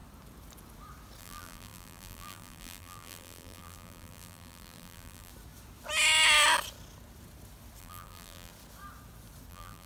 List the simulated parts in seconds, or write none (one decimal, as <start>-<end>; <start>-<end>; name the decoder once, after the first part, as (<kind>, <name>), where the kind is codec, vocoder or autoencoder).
1.2-5.3 (vocoder, BigVGAN v2); 7.8-8.5; 9.5-9.9

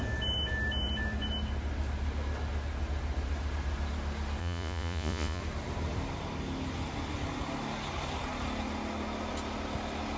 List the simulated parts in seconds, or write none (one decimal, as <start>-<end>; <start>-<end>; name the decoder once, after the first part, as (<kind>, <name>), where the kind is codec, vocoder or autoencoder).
4.4-5.4 (vocoder, Vocos)

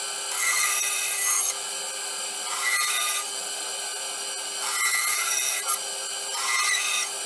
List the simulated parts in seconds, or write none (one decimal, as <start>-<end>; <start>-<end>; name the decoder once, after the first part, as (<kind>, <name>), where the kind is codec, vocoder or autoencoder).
none

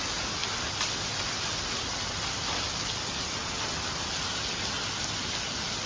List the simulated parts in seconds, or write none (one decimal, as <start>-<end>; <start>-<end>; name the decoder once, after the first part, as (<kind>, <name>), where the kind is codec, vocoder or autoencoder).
none

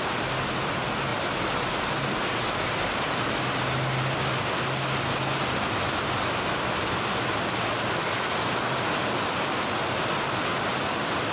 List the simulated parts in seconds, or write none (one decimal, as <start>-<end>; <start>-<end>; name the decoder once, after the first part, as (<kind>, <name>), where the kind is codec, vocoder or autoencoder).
none

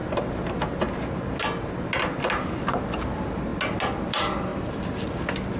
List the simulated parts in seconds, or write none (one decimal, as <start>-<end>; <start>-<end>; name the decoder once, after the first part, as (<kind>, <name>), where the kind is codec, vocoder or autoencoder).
none

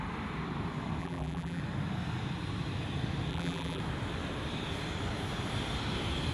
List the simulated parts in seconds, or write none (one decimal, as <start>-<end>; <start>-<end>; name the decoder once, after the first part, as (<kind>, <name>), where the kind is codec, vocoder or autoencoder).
1.0-1.6 (vocoder, BigVGAN v2); 3.3-3.8